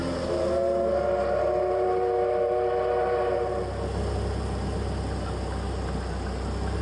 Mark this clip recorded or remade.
recorded